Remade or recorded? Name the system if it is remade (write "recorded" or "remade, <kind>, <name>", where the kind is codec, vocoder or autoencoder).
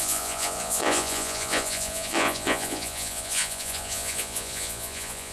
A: remade, vocoder, Vocos